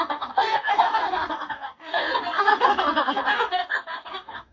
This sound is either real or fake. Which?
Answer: fake